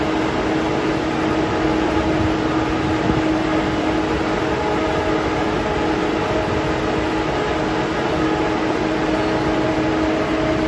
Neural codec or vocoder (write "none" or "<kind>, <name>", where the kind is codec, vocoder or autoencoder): none